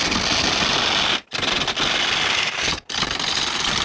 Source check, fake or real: real